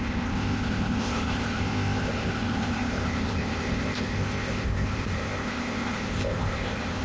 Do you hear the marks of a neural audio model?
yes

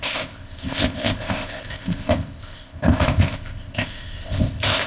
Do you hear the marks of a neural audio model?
yes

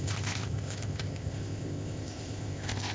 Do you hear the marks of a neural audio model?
yes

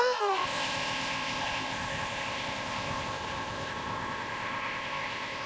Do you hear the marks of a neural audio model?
yes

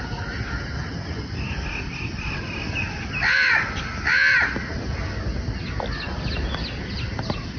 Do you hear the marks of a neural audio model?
no